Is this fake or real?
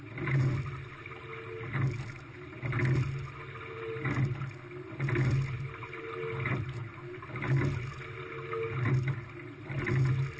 real